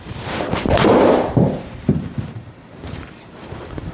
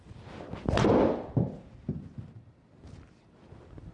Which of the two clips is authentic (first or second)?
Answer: second